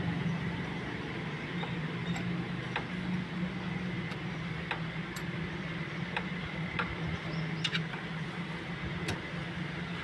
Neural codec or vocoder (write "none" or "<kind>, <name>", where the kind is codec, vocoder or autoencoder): none